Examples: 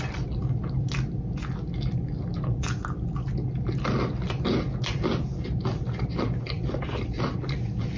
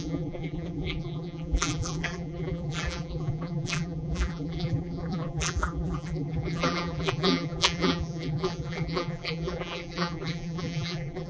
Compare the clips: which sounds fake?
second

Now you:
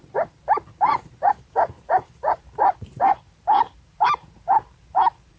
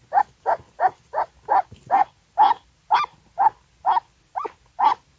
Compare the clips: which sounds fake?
first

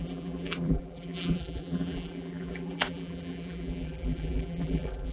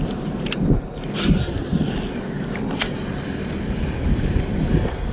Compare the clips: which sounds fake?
first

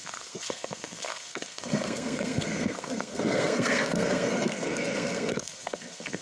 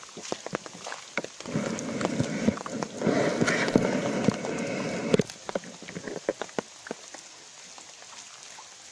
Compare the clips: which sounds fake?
first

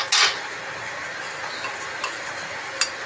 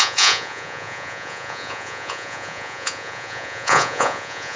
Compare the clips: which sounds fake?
second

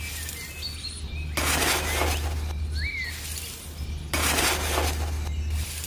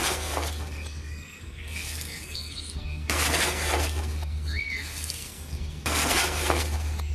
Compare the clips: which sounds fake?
second